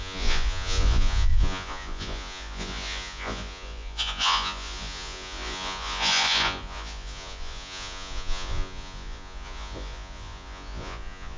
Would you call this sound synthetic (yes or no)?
yes